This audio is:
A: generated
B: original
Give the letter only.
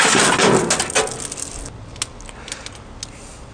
B